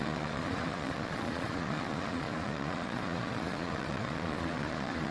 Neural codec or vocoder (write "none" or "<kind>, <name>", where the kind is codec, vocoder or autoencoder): vocoder, Vocos